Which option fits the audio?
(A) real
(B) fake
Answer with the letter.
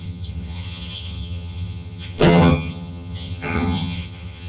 B